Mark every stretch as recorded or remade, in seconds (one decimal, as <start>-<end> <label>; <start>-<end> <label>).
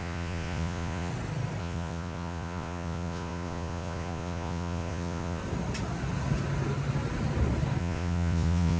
0.0-1.1 remade; 1.1-1.6 recorded; 1.6-5.4 remade; 5.4-7.8 recorded; 7.8-8.8 remade